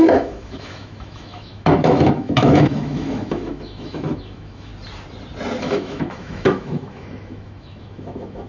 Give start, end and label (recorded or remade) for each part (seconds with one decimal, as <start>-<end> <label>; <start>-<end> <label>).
0.0-4.7 remade; 4.7-5.6 recorded; 5.6-8.5 remade

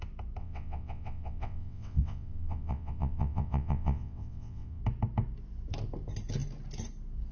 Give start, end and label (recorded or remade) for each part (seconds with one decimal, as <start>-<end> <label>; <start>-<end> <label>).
0.0-0.4 recorded; 0.4-4.8 remade; 4.8-7.3 recorded

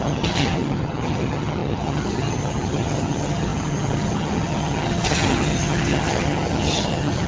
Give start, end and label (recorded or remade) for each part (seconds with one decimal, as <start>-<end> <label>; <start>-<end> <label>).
0.0-7.3 remade

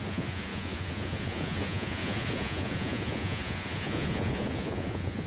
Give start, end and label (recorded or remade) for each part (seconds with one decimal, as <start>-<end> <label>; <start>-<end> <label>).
0.0-5.3 remade

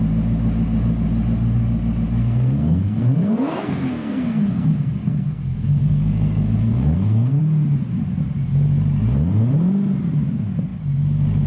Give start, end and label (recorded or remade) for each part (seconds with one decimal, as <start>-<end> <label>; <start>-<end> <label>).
0.0-2.2 recorded; 2.2-7.4 remade; 7.4-11.5 recorded

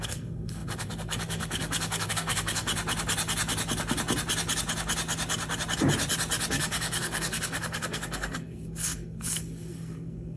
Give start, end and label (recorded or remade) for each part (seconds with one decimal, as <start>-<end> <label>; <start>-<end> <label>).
0.0-2.7 remade; 2.7-6.5 recorded; 6.5-10.4 remade

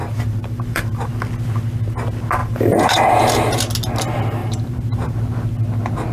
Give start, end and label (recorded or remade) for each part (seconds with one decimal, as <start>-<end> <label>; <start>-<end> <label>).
0.0-1.1 remade; 1.1-2.4 recorded; 2.4-3.1 remade; 3.1-4.4 recorded; 4.4-5.2 remade; 5.2-6.1 recorded